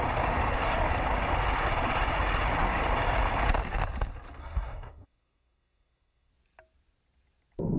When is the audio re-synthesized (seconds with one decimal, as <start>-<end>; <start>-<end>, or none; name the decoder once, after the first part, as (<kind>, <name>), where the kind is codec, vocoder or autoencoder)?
4.4-6.3 (codec, SNAC)